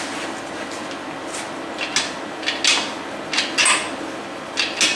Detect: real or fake real